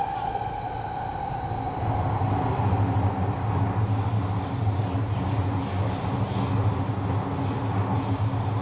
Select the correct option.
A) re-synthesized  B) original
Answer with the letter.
B